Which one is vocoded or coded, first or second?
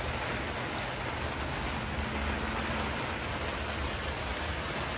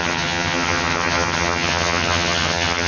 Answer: second